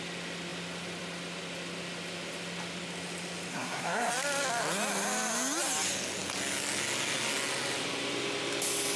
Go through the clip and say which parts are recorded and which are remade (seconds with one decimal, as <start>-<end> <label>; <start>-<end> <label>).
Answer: 0.0-3.5 recorded; 3.5-4.1 remade; 4.1-9.0 recorded